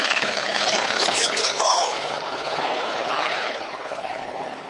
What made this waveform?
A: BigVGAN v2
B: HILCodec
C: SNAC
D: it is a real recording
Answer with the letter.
B